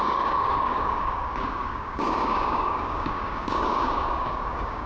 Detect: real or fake fake